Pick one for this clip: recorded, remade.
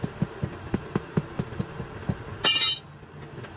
recorded